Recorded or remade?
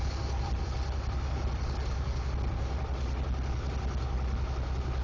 recorded